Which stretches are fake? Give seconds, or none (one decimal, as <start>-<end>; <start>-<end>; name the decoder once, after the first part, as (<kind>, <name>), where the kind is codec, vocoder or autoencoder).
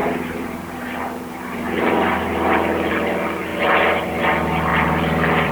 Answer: 0.0-2.9 (vocoder, BigVGAN v2); 3.5-4.3; 4.7-5.5